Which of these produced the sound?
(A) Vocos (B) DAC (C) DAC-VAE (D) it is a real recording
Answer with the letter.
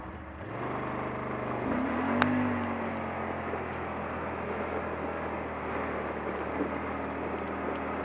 D